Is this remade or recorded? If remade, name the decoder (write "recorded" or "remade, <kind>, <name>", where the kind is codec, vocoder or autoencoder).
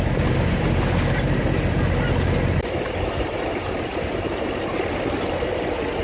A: remade, vocoder, BigVGAN v2